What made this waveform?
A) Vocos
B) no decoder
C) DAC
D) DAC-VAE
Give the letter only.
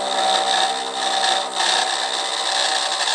B